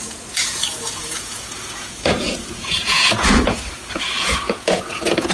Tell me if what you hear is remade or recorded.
remade